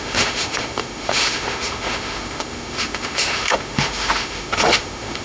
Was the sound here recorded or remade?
remade